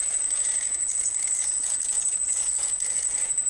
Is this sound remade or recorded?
remade